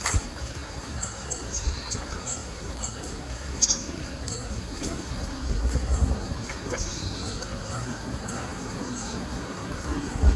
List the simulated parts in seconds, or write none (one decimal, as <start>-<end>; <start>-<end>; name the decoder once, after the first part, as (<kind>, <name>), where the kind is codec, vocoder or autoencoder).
0.0-10.4 (codec, SNAC)